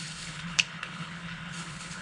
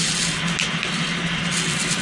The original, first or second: second